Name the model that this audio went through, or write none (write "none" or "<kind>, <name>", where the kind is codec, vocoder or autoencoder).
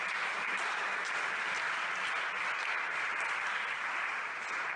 none